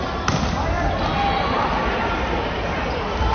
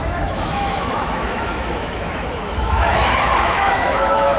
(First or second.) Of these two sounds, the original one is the first